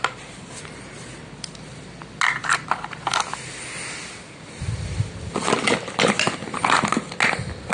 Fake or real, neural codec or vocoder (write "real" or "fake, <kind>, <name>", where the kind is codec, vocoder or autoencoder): real